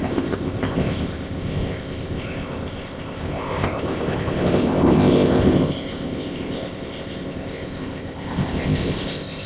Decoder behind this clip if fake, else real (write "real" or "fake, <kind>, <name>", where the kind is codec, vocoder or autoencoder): fake, codec, ZipCodec